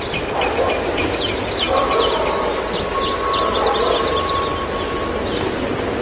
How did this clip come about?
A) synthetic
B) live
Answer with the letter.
B